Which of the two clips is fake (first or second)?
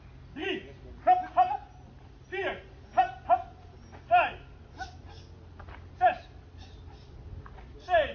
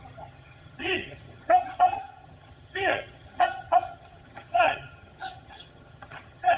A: second